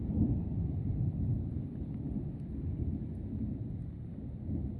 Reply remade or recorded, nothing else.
recorded